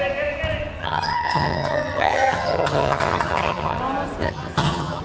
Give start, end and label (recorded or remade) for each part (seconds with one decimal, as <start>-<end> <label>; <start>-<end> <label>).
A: 0.0-0.8 recorded; 0.8-3.8 remade; 3.8-4.2 recorded; 4.2-5.0 remade